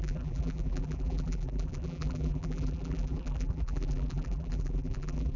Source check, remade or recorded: remade